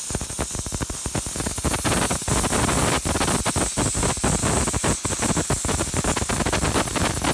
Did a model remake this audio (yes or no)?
no